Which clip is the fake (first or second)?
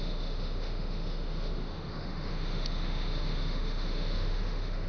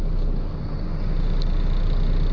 first